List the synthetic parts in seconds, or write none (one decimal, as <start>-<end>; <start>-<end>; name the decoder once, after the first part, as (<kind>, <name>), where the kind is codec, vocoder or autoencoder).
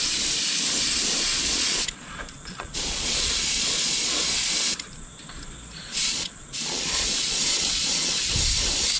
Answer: 1.3-4.2 (vocoder, Vocos); 5.8-8.3